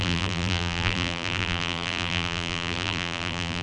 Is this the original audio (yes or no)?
no